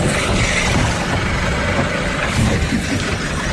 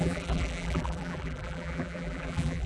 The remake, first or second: second